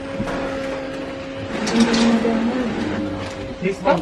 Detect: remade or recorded recorded